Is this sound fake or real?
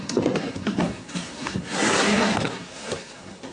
fake